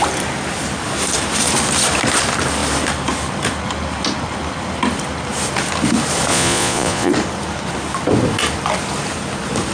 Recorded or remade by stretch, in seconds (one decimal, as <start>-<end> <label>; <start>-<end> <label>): 0.0-6.3 recorded; 6.3-7.1 remade; 7.1-9.7 recorded